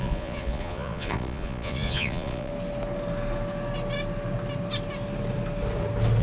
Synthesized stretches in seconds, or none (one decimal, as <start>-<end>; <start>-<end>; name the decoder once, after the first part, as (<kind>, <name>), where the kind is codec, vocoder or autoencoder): 0.0-2.5 (vocoder, Vocos)